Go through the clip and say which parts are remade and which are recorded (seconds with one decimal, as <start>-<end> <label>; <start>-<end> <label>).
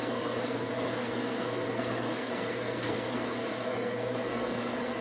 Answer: 0.0-5.0 remade